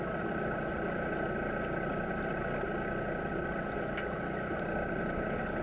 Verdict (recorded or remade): recorded